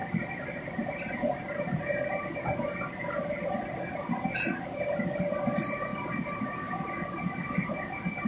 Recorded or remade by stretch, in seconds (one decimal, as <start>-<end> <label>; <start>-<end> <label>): 0.0-1.6 remade; 1.6-5.9 recorded; 5.9-6.4 remade; 6.4-8.3 recorded

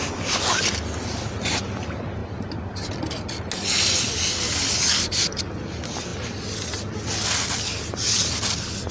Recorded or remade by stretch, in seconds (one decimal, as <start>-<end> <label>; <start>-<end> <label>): 0.0-2.2 recorded; 2.2-2.9 remade; 2.9-8.9 recorded

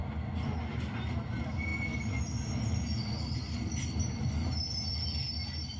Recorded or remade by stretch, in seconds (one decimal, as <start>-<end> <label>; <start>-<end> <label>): 0.0-4.0 recorded; 4.0-4.9 remade; 4.9-5.8 recorded